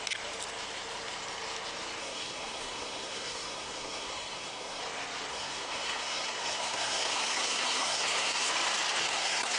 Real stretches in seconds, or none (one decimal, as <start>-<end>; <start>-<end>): 0.0-2.0; 4.8-5.3; 8.5-9.0